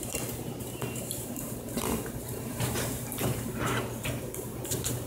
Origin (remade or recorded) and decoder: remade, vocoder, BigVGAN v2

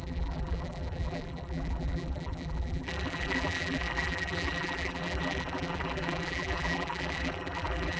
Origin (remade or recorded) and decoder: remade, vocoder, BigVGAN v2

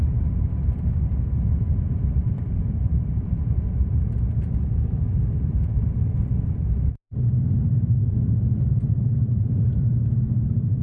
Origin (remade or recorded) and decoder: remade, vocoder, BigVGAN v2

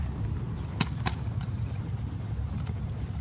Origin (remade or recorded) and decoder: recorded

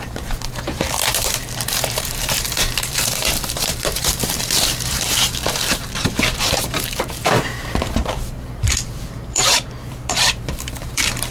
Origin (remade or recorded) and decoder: remade, vocoder, BigVGAN v2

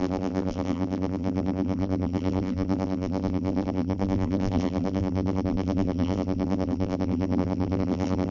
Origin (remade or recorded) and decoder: remade, vocoder, BigVGAN v2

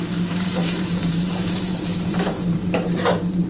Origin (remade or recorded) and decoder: remade, vocoder, BigVGAN v2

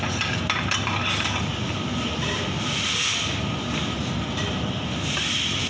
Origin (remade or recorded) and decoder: recorded